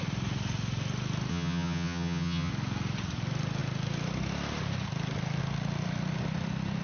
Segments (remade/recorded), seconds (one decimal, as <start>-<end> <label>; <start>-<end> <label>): 0.0-1.3 recorded; 1.3-2.5 remade; 2.5-6.8 recorded